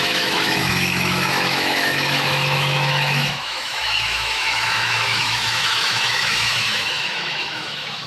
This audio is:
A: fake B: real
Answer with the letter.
A